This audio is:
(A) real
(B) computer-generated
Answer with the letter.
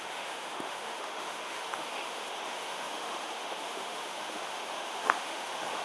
B